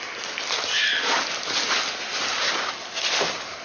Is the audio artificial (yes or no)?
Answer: no